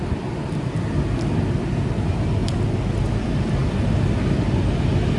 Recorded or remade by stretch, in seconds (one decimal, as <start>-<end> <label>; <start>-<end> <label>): 0.0-5.2 recorded